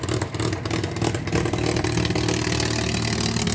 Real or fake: real